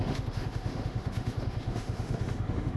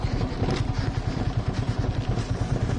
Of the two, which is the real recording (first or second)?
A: second